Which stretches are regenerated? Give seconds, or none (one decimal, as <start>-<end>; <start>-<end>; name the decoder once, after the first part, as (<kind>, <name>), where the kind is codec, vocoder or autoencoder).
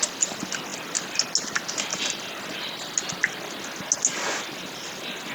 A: none